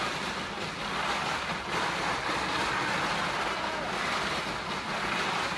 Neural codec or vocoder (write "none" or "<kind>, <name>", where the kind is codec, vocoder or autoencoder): none